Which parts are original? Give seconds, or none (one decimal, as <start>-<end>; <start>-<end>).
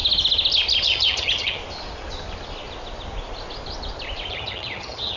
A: 0.0-0.8; 1.6-4.3